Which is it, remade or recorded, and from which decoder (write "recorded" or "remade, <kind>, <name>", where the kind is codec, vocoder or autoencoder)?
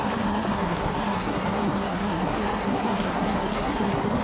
remade, codec, SNAC